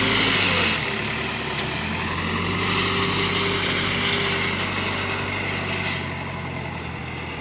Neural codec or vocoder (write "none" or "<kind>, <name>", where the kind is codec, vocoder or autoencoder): none